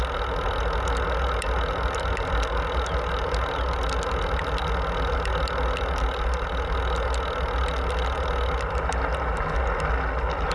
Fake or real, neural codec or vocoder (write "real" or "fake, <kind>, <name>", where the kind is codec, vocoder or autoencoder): real